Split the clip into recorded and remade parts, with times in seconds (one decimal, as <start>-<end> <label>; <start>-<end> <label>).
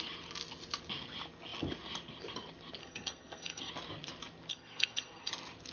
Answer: 0.0-2.8 recorded; 2.8-3.7 remade; 3.7-4.5 recorded; 4.5-5.3 remade; 5.3-5.7 recorded